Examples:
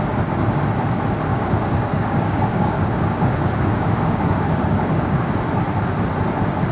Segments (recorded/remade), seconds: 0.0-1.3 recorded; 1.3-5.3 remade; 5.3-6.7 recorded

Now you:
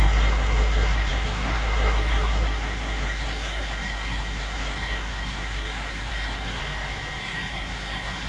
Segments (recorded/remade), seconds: 0.0-6.6 remade; 6.6-7.2 recorded; 7.2-8.3 remade

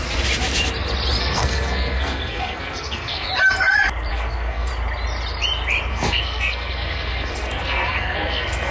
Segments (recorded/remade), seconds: 0.0-1.2 recorded; 1.2-3.3 remade; 3.3-4.1 recorded; 4.1-4.7 remade; 4.7-5.9 recorded; 5.9-8.7 remade

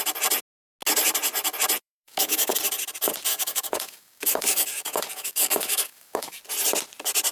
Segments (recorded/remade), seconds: 0.0-1.8 recorded; 1.8-2.5 remade; 2.5-3.3 recorded; 3.3-6.4 remade; 6.4-7.3 recorded

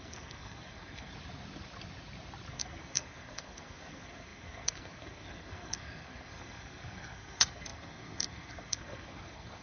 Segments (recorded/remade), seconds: 0.0-1.1 remade; 1.1-2.5 recorded; 2.5-9.6 remade

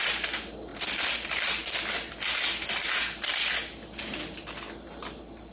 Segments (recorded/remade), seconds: 0.0-5.5 recorded

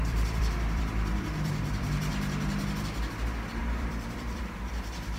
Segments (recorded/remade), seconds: 0.0-2.1 remade; 2.1-3.6 recorded; 3.6-5.2 remade